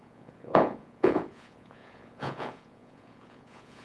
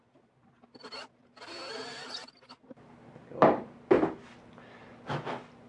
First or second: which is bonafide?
second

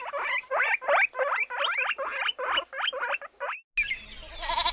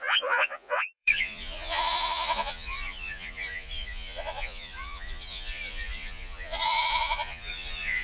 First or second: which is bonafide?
first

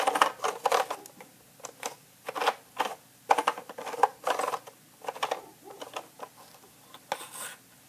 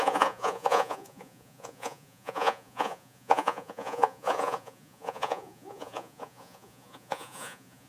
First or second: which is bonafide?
first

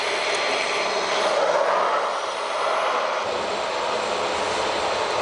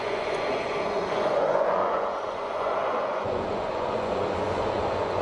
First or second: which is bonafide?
first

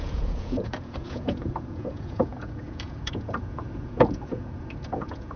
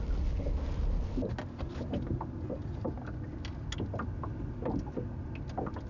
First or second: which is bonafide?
second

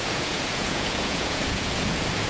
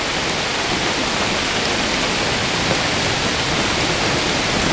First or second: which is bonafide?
second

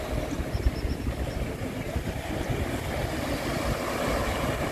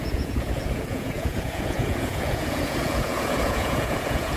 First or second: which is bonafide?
first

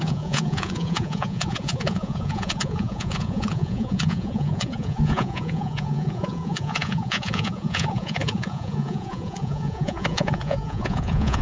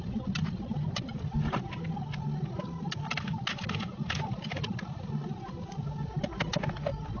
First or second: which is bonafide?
second